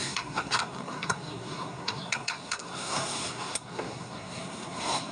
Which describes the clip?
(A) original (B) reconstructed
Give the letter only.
B